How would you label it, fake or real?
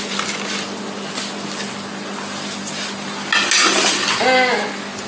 real